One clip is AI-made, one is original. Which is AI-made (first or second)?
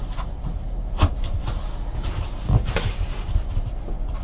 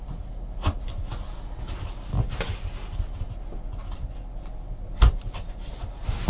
first